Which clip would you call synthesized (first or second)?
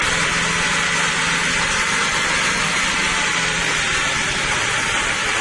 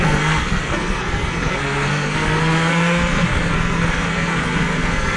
second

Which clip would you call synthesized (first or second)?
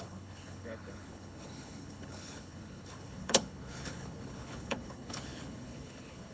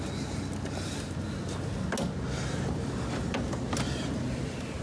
first